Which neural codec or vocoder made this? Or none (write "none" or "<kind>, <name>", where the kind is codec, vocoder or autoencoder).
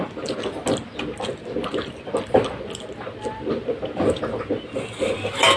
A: none